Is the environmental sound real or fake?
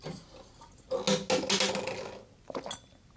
real